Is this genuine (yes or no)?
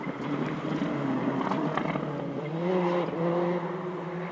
yes